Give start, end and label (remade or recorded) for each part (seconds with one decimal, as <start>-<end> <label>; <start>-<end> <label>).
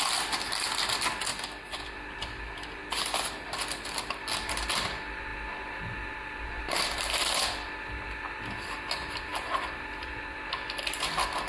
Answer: 0.0-11.5 recorded